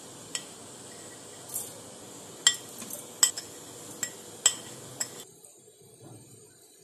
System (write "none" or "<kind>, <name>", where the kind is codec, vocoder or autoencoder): none